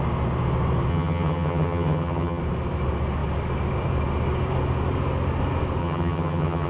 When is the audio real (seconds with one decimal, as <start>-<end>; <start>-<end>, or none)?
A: 0.0-0.9; 2.4-5.8